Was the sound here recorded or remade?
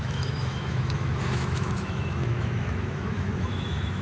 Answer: remade